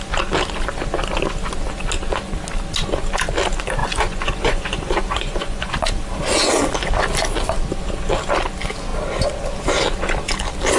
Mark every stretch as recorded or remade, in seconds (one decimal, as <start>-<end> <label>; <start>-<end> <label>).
0.0-3.8 recorded; 3.8-5.9 remade; 5.9-10.8 recorded